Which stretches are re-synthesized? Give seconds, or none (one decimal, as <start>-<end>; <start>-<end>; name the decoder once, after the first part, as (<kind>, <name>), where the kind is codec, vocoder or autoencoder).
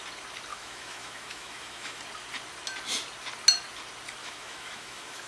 0.5-2.0 (autoencoder, DAC-VAE); 4.2-5.3